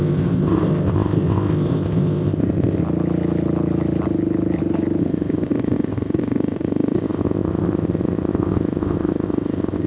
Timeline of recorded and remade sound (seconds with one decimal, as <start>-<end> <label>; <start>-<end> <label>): 0.0-2.8 remade; 2.8-5.0 recorded; 5.0-9.9 remade